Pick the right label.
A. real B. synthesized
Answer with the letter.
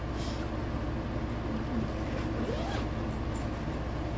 A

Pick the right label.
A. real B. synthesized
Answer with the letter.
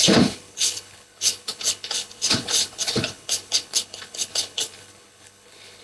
B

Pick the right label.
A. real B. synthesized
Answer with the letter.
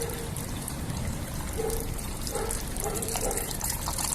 B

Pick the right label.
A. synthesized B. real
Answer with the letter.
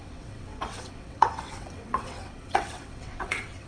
A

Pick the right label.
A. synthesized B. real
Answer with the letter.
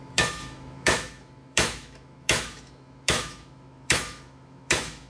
A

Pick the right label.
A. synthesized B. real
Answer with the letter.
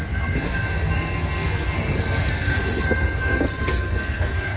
A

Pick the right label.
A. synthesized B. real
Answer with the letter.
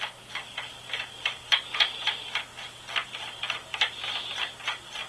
B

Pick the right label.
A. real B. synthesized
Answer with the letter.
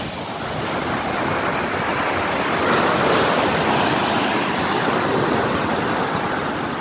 A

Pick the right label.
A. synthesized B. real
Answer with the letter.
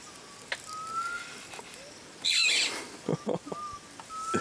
B